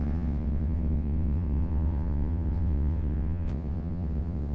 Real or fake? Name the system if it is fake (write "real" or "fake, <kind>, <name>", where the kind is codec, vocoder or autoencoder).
fake, vocoder, WaveNeXt